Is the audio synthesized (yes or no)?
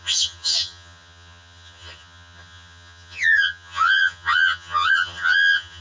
yes